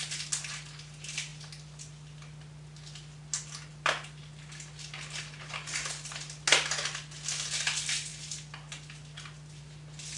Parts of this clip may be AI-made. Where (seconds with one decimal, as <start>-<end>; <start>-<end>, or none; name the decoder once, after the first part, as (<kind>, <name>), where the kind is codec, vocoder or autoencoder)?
none